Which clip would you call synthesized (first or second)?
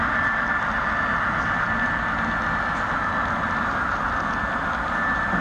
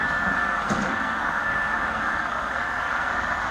second